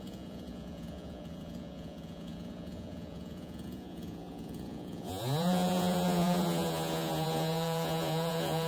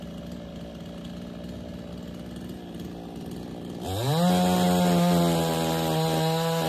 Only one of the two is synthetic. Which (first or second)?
first